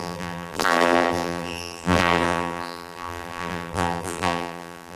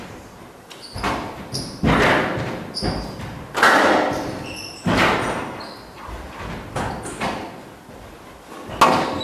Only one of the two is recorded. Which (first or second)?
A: second